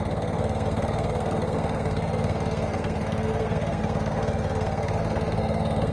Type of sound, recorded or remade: remade